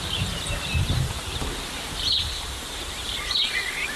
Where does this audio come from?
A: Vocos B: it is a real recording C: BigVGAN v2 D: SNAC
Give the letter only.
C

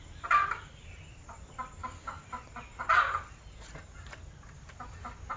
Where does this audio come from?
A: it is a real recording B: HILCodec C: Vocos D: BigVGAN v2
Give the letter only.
A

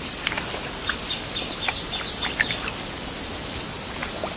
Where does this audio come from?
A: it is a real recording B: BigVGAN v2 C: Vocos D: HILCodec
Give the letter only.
A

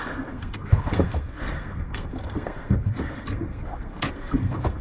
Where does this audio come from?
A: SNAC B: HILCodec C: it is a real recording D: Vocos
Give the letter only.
A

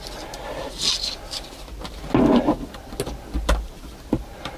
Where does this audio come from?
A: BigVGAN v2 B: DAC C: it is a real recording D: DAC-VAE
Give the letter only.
C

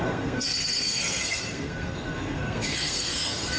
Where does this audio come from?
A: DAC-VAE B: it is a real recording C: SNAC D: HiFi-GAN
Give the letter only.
C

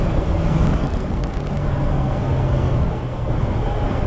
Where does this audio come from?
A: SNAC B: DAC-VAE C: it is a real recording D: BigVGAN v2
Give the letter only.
A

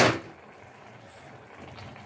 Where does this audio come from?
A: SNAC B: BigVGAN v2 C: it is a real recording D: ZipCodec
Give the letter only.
C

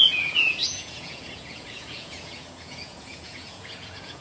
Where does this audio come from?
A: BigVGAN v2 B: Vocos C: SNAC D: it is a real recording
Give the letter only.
B